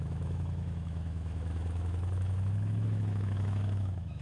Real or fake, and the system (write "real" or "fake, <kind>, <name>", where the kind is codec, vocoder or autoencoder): fake, autoencoder, DAC-VAE